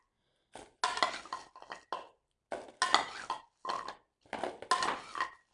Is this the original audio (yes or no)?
yes